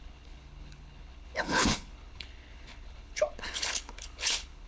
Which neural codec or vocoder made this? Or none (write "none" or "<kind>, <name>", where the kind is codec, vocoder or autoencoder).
codec, HILCodec